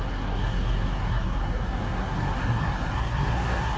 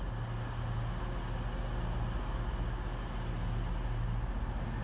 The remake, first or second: first